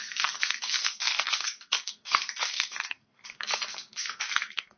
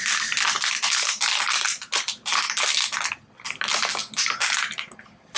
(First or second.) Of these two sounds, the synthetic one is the first